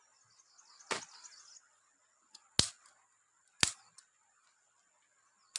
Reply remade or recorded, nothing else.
recorded